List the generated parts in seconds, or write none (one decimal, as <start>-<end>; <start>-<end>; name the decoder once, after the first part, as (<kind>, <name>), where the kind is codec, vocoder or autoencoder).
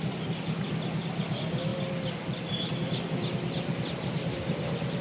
none